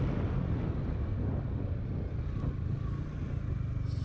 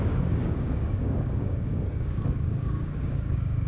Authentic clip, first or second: first